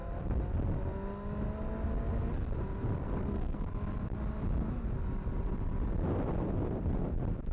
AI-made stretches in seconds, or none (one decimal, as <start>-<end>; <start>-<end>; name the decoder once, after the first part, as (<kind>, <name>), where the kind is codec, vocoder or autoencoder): 3.0-3.7 (codec, SNAC)